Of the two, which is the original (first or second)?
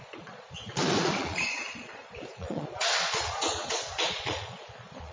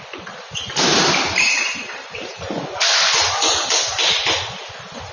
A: second